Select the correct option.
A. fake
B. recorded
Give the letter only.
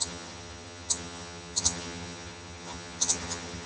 A